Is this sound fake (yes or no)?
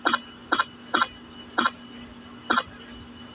no